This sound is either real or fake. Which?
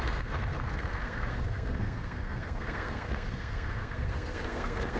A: fake